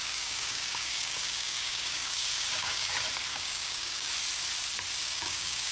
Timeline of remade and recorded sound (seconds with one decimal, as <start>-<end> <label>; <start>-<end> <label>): 0.0-2.9 remade; 2.9-3.3 recorded; 3.3-4.1 remade; 4.1-5.0 recorded; 5.0-5.7 remade